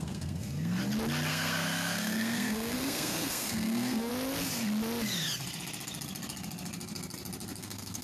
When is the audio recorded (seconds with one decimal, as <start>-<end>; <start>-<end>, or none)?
0.8-1.3; 4.1-7.6